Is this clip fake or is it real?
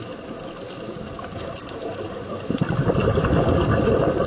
real